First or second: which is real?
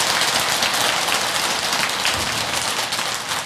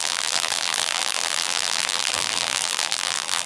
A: first